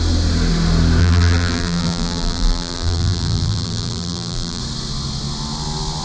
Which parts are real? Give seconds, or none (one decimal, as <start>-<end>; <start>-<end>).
0.0-1.0; 4.6-6.0